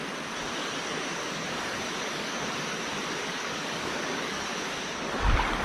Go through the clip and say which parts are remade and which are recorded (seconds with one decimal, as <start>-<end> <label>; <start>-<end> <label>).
0.0-0.6 recorded; 0.6-2.8 remade; 2.8-3.2 recorded; 3.2-4.6 remade; 4.6-5.6 recorded